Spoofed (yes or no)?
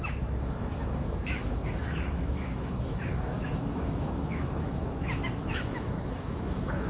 yes